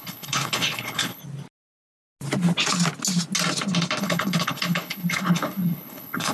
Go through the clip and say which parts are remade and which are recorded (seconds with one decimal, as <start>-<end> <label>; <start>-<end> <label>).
0.0-1.2 remade; 1.2-4.0 recorded; 4.0-6.3 remade